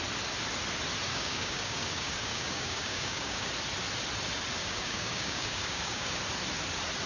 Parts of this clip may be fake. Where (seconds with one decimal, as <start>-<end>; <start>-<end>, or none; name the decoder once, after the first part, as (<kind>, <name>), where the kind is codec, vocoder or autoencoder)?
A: 1.1-3.5 (codec, DAC); 4.6-6.2